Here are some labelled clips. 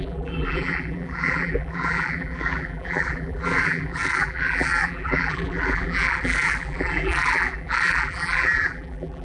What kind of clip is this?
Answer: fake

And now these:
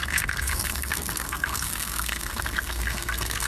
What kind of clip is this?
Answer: fake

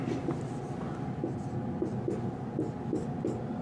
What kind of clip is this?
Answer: real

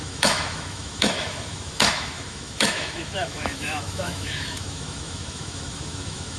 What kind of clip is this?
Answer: fake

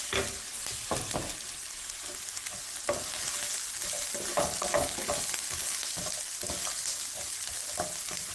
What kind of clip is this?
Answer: real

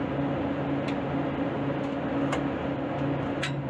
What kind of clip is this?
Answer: real